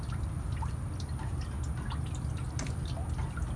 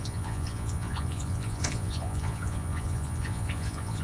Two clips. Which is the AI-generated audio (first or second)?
second